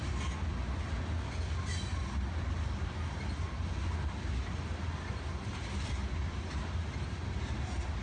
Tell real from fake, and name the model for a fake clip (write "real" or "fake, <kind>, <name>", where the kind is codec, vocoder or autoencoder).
real